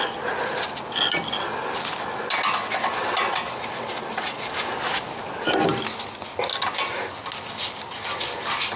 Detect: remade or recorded recorded